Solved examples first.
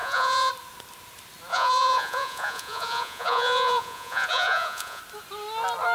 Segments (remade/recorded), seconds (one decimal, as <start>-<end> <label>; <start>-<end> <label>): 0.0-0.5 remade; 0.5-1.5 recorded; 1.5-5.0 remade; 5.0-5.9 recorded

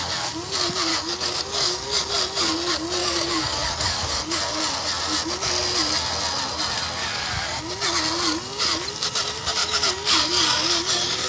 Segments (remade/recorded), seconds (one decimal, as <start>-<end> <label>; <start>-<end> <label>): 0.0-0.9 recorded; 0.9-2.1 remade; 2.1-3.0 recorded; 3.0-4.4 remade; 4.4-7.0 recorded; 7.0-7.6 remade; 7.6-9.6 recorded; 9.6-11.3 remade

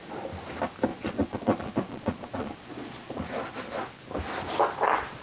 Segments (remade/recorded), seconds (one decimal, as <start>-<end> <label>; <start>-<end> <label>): 0.0-0.9 recorded; 0.9-3.2 remade; 3.2-5.2 recorded

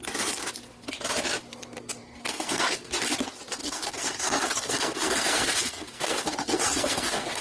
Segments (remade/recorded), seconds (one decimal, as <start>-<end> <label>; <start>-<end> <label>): 0.0-2.0 recorded; 2.0-2.9 remade; 2.9-3.6 recorded; 3.6-7.4 remade

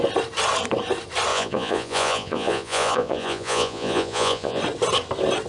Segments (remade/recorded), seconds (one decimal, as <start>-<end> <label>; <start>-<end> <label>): 0.0-1.3 recorded; 1.3-4.6 remade; 4.6-5.5 recorded